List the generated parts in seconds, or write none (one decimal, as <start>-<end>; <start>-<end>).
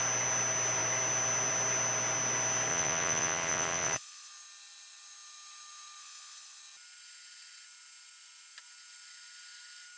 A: 2.7-4.3; 6.0-6.6